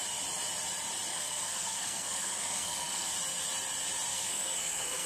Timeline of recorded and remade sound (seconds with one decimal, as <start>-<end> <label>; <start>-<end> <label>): 0.0-1.1 recorded; 1.1-3.1 remade; 3.1-4.1 recorded; 4.1-5.1 remade